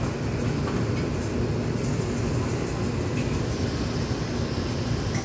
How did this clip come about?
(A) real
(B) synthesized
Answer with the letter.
A